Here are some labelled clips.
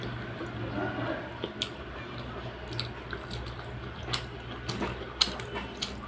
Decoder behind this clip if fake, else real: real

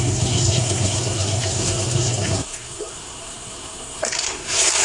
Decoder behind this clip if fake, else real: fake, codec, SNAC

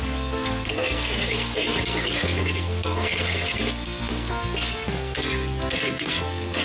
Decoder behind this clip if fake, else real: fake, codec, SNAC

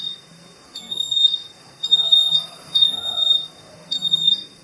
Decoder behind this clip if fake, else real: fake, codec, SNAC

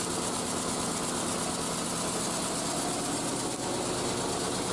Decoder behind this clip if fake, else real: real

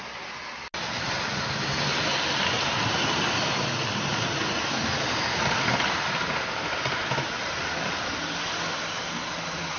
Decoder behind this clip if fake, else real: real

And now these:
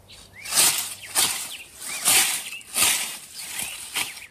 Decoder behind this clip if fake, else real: real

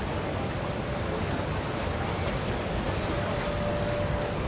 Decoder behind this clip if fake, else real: real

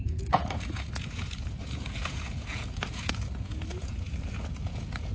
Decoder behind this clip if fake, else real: fake, vocoder, Vocos